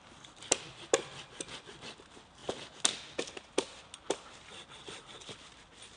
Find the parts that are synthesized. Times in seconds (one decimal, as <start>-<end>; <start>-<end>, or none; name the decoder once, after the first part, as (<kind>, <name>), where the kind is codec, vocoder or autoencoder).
none